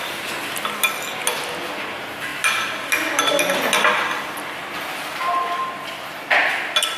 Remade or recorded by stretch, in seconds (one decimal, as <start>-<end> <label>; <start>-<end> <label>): 0.0-7.0 recorded